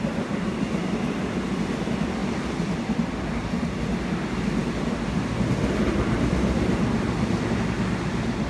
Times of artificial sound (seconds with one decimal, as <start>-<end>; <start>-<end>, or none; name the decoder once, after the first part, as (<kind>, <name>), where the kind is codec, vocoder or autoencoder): none